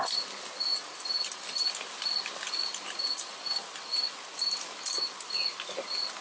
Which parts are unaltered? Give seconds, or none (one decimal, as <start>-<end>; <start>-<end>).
0.0-6.2